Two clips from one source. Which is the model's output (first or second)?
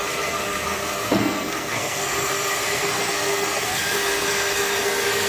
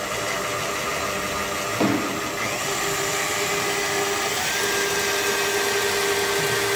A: first